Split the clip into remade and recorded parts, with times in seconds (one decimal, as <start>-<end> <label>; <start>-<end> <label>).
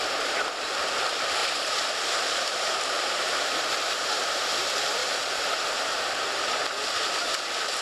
0.0-1.4 recorded; 1.4-3.7 remade; 3.7-5.0 recorded; 5.0-6.5 remade; 6.5-7.8 recorded